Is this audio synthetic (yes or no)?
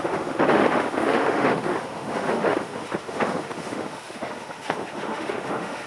yes